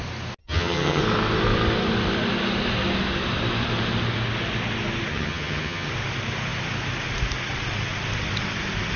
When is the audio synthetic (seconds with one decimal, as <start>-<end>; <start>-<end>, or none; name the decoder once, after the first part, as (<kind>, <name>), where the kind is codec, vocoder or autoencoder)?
0.4-1.0 (vocoder, HiFi-GAN); 5.1-5.9